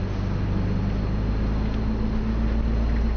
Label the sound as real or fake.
real